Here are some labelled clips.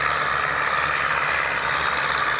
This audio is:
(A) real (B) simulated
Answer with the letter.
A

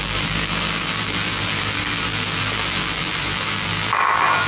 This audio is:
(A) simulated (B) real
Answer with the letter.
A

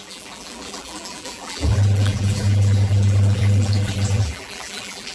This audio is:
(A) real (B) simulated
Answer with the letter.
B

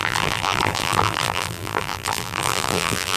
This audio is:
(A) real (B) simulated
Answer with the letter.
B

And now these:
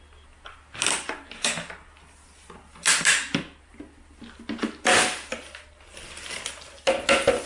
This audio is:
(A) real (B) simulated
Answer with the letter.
A